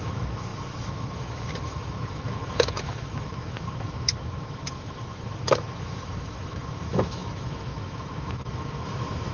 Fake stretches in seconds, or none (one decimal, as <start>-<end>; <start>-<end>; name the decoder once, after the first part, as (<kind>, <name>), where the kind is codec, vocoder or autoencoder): 0.0-9.3 (autoencoder, DAC-VAE)

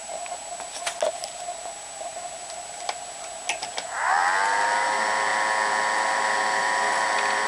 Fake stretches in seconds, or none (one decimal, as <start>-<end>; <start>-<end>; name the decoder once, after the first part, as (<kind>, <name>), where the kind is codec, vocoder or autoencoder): none

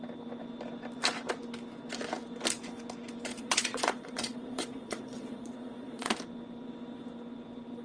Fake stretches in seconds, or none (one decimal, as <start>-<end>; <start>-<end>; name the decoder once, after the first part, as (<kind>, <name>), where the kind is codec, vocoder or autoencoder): 3.3-6.1 (vocoder, Vocos)

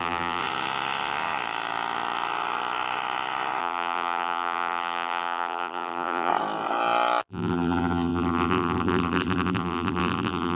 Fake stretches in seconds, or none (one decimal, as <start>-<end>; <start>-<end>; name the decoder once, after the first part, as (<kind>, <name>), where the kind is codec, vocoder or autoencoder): 0.0-0.4 (vocoder, BigVGAN v2); 3.6-6.3; 7.2-10.6

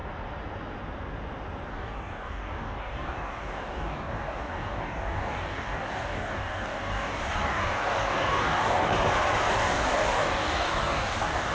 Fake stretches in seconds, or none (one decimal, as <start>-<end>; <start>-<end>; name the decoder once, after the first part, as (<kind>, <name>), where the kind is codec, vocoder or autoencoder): 1.7-8.9 (codec, DAC); 9.5-11.5

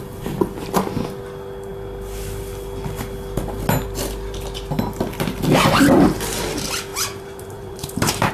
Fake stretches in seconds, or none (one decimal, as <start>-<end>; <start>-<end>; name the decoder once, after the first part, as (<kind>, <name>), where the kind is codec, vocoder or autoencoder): 6.9-8.3 (vocoder, BigVGAN v2)

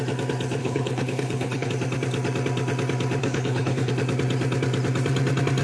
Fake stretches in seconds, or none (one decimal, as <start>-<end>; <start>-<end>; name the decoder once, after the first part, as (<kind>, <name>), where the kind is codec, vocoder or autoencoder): 0.6-1.7 (codec, HILCodec); 3.2-3.9

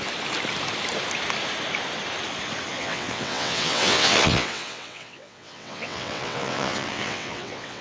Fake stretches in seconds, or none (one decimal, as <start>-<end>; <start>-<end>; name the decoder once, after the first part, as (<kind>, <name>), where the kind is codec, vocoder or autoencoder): 2.7-7.8 (vocoder, WaveNeXt)